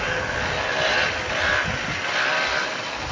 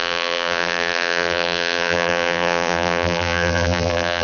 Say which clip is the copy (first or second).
second